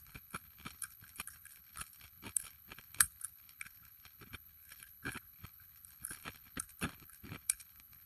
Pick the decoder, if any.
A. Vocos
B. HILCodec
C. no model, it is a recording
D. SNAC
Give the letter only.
B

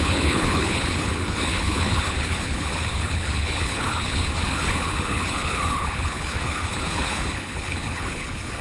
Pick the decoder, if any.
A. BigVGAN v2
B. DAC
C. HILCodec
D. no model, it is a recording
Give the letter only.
C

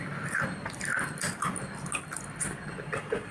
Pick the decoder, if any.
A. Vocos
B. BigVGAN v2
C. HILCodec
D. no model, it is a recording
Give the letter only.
D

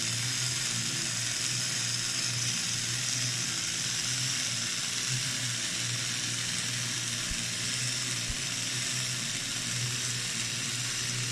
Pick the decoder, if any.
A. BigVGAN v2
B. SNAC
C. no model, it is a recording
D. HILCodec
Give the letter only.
C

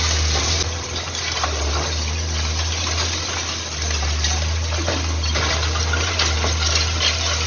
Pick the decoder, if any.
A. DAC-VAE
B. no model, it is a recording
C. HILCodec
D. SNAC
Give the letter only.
B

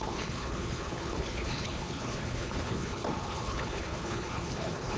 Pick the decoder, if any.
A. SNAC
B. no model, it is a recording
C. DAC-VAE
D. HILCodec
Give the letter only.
D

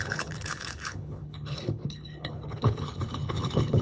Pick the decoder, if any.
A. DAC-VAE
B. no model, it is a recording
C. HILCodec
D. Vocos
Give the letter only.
C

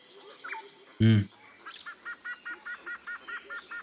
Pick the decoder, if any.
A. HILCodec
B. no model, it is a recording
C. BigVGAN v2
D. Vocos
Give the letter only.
B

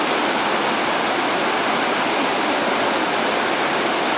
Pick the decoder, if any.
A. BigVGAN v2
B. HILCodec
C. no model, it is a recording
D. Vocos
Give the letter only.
C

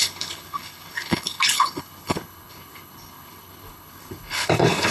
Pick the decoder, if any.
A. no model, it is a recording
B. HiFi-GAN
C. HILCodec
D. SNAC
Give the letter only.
C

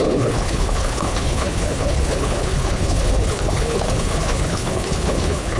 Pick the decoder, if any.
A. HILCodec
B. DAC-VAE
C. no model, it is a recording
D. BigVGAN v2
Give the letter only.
A